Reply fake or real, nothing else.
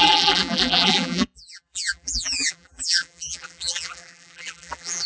fake